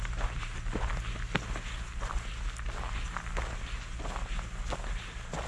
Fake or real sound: real